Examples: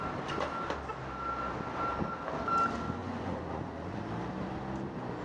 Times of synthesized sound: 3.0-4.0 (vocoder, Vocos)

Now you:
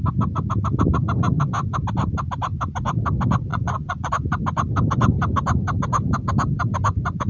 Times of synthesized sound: 3.5-4.1 (vocoder, Vocos)

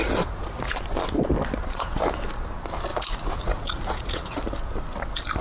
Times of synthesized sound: 0.0-0.8 (vocoder, Vocos); 1.6-2.1; 2.9-4.4

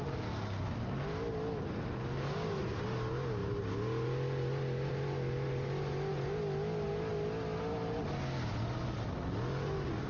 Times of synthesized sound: none

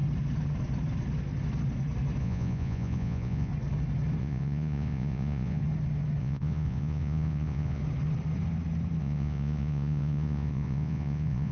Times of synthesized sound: 2.2-3.5 (vocoder, Vocos); 4.2-5.6; 6.2-7.8; 9.0-11.5